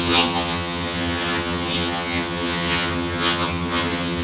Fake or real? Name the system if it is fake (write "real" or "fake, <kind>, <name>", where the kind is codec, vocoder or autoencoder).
fake, vocoder, HiFi-GAN